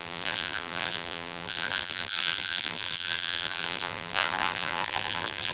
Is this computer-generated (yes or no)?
yes